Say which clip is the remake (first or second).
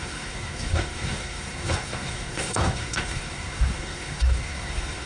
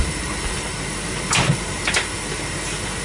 first